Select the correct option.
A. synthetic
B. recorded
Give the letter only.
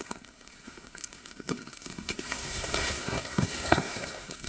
A